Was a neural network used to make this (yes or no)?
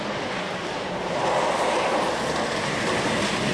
no